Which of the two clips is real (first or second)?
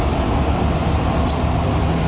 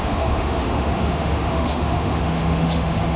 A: first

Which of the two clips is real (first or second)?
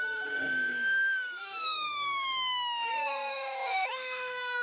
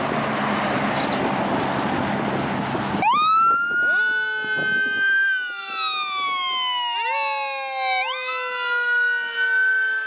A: second